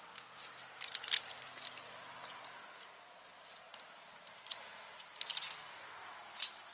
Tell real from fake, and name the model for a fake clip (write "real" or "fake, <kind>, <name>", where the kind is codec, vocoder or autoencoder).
real